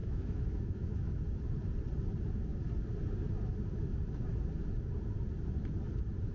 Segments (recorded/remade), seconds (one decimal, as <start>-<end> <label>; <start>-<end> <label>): 0.0-1.2 remade; 1.2-6.3 recorded